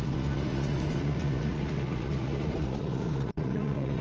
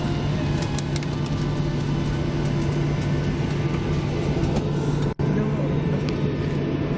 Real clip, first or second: second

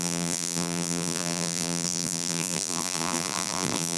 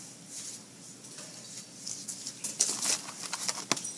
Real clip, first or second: second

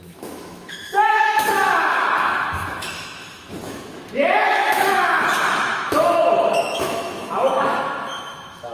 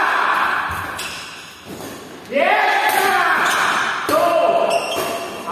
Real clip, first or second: second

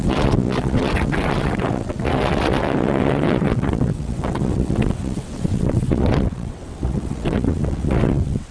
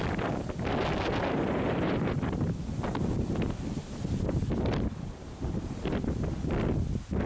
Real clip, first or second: second